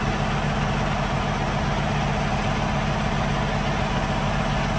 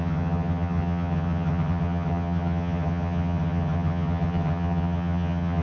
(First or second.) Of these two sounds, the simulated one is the second